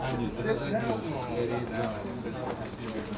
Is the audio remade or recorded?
recorded